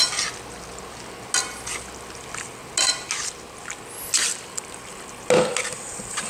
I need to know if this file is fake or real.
real